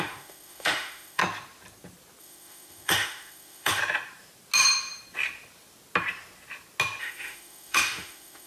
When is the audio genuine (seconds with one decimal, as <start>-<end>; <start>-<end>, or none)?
1.2-2.2; 3.8-7.0